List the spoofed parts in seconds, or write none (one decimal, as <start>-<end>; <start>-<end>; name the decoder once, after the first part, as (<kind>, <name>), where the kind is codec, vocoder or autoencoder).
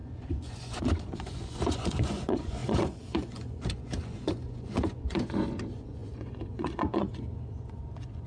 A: 0.0-8.3 (vocoder, Vocos)